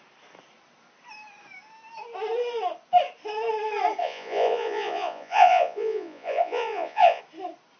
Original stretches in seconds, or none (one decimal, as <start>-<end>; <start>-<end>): 0.0-4.0; 7.2-7.8